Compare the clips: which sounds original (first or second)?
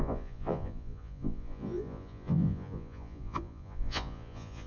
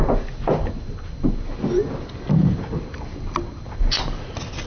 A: second